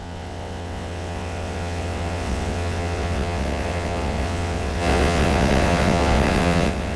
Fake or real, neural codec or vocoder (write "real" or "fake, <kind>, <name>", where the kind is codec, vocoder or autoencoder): fake, vocoder, WaveNeXt